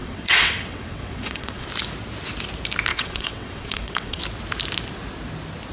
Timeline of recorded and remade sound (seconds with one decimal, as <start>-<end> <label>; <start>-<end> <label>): 0.0-1.7 remade; 1.7-2.9 recorded; 2.9-4.2 remade; 4.2-5.7 recorded